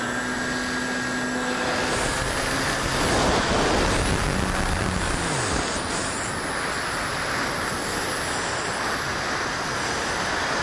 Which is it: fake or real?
real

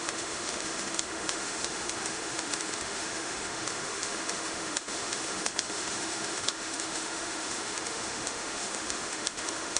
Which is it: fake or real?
fake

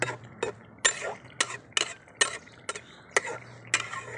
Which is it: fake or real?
real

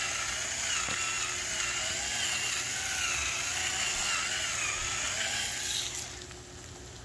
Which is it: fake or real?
real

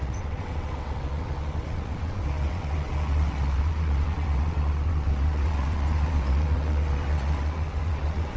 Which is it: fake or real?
fake